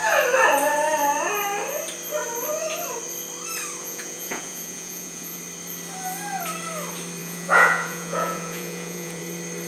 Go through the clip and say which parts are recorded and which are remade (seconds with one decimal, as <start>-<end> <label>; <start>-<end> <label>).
0.0-3.8 recorded; 3.8-5.4 remade; 5.4-7.2 recorded; 7.2-9.2 remade; 9.2-9.7 recorded